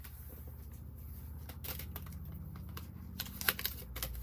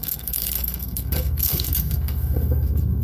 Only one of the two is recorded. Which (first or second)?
first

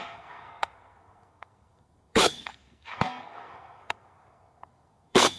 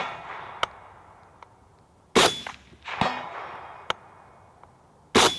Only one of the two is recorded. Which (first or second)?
second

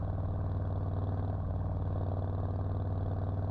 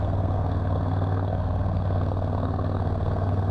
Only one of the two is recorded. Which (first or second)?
first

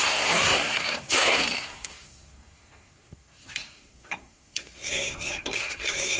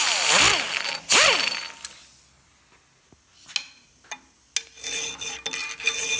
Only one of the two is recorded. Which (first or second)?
second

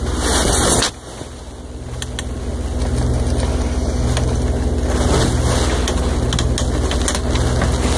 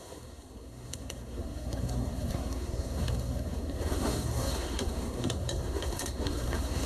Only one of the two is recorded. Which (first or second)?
first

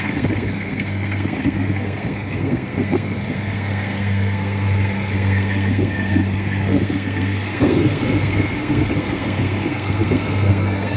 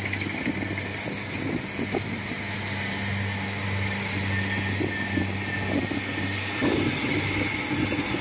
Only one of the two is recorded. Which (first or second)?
second